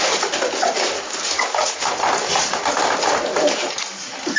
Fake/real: fake